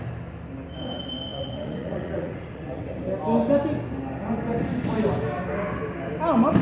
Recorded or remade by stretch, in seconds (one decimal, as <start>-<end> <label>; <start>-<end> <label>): 0.0-1.3 recorded; 1.3-2.9 remade; 2.9-6.6 recorded